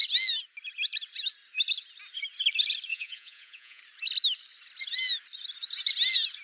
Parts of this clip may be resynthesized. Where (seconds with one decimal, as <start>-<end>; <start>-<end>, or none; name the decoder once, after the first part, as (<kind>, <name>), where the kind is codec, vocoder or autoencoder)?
2.9-3.8 (vocoder, Vocos)